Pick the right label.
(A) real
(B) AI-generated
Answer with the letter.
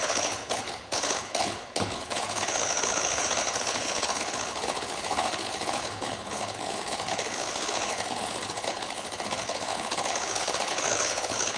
B